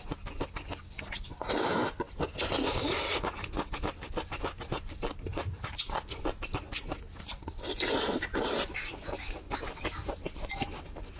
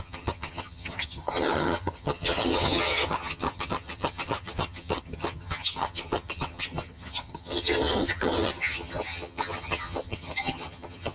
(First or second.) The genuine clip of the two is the first